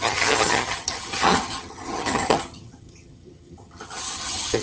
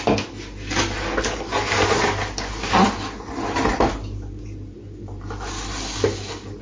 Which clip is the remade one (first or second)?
first